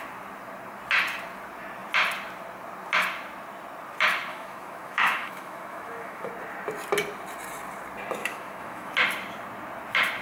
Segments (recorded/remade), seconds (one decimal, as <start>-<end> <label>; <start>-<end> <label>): 0.0-4.3 recorded; 4.3-6.3 remade; 6.3-8.2 recorded; 8.2-8.9 remade; 8.9-10.2 recorded